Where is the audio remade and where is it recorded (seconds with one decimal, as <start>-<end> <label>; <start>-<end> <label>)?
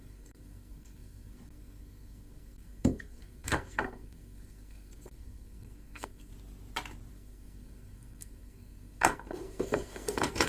0.0-6.3 remade; 6.3-7.1 recorded; 7.1-10.5 remade